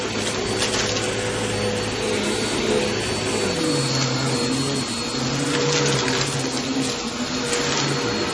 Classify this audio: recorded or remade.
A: recorded